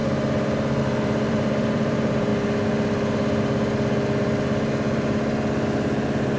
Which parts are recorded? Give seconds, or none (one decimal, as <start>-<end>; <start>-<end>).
0.0-0.8; 2.3-6.4